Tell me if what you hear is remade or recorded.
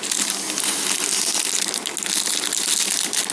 recorded